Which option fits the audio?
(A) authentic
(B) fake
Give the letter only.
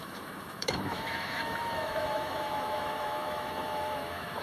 B